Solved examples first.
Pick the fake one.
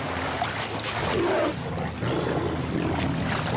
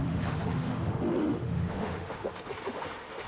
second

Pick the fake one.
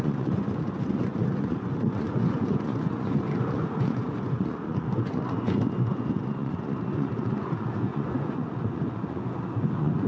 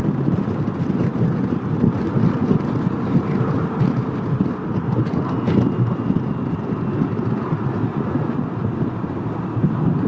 first